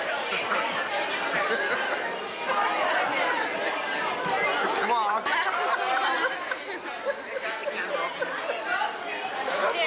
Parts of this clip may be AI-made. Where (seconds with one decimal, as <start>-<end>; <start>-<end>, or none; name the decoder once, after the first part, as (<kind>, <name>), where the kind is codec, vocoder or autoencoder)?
none